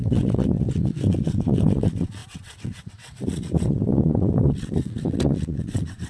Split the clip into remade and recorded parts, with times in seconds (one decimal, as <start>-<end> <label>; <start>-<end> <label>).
0.0-6.1 remade